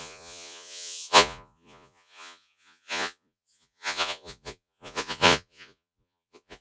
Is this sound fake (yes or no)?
yes